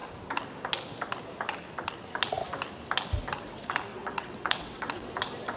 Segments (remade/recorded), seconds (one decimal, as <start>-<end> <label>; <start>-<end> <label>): 0.0-3.9 recorded; 3.9-5.1 remade; 5.1-5.6 recorded